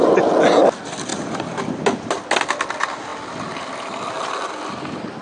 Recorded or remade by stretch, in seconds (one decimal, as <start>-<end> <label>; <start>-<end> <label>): 0.0-5.2 recorded